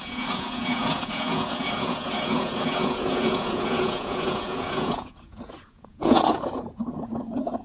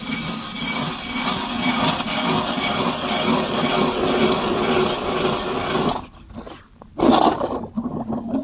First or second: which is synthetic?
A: first